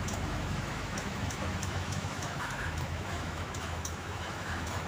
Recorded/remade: remade